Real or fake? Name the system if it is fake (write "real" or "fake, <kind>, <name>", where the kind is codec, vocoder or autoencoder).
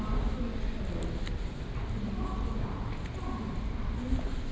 real